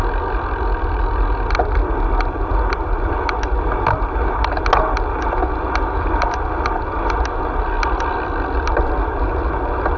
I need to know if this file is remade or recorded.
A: recorded